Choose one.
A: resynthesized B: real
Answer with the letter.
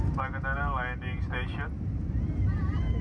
B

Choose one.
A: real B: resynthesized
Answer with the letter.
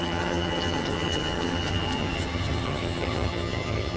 B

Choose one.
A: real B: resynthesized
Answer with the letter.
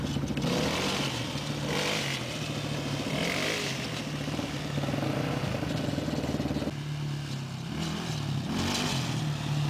A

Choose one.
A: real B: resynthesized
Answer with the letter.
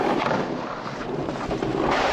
A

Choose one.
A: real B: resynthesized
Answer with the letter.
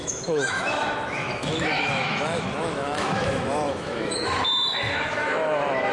B